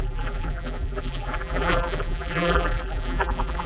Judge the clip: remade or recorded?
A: remade